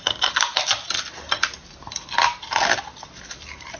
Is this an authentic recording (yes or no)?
yes